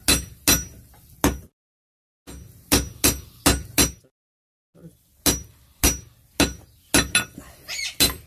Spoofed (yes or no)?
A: no